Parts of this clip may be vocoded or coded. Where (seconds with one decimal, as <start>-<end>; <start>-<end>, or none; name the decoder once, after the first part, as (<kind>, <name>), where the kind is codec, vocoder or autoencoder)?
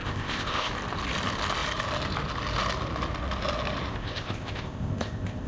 0.0-0.7 (codec, ZipCodec); 3.9-5.5